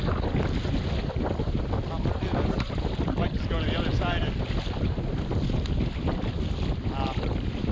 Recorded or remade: recorded